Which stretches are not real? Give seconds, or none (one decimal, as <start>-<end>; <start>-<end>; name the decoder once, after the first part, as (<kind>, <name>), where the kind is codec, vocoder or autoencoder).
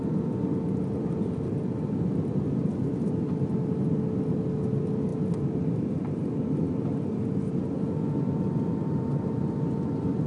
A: none